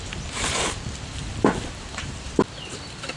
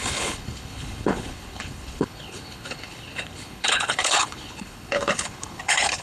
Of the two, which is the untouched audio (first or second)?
first